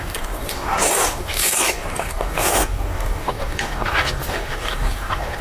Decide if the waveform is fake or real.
fake